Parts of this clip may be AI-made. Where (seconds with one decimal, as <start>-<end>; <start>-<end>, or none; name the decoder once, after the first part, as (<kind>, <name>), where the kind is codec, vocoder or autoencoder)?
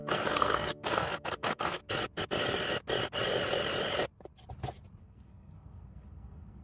0.0-1.8 (codec, SNAC); 5.0-6.6